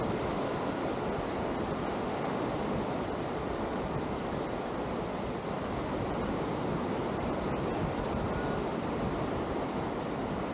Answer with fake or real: real